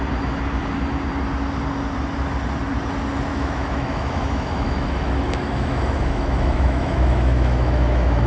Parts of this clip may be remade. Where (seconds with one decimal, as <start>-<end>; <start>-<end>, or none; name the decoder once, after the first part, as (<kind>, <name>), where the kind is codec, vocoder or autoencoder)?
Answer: 3.3-8.3 (autoencoder, DAC-VAE)